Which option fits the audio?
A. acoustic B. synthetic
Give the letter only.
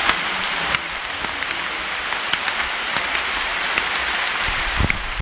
A